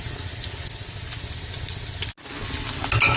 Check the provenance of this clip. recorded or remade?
recorded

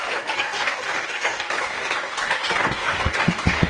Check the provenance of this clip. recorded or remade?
remade